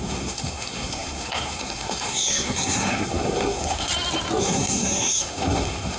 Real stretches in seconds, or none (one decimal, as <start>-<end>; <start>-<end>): 3.9-4.4